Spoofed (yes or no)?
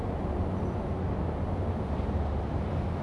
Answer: no